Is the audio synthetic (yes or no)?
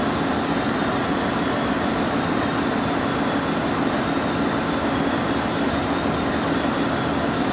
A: no